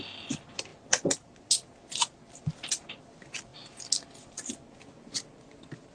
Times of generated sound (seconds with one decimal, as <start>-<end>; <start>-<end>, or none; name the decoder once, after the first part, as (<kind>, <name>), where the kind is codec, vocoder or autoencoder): none

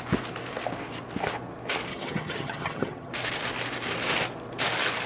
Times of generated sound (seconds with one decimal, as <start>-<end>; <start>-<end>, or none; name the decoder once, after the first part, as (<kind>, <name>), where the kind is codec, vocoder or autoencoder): 1.9-3.1 (vocoder, HiFi-GAN)

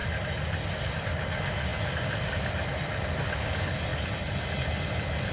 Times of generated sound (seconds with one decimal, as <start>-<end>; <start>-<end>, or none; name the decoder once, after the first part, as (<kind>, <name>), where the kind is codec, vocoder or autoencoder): none

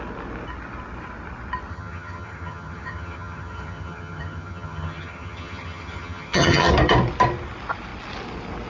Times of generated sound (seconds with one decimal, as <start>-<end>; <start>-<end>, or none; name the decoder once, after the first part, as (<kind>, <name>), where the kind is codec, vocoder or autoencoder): 1.7-6.7 (vocoder, HiFi-GAN)

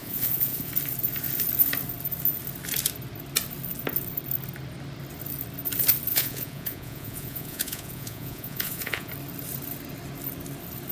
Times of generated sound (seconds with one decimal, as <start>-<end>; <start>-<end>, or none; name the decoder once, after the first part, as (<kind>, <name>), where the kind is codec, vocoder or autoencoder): 0.0-0.7 (vocoder, Vocos); 6.1-9.1